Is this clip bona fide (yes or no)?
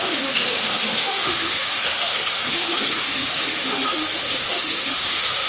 no